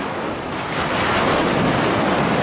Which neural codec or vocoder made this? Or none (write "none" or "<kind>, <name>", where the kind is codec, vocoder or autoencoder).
none